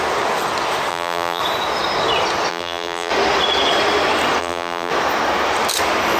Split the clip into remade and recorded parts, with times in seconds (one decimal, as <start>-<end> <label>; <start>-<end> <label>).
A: 0.0-0.9 recorded; 0.9-1.4 remade; 1.4-2.5 recorded; 2.5-3.1 remade; 3.1-4.4 recorded; 4.4-4.9 remade; 4.9-6.2 recorded